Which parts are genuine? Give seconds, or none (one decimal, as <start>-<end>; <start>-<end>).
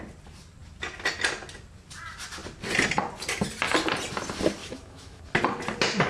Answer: 0.0-4.6; 5.2-6.1